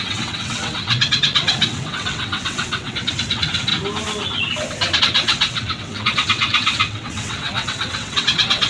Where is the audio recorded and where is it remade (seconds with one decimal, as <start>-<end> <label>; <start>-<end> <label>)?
0.0-3.7 remade; 3.7-5.0 recorded; 5.0-8.7 remade